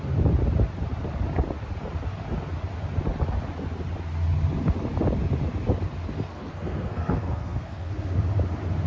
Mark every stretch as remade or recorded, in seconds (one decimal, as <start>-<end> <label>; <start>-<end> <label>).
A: 0.0-6.3 recorded; 6.3-7.9 remade; 7.9-8.9 recorded